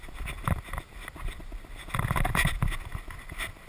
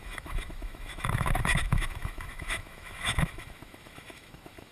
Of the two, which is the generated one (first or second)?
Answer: second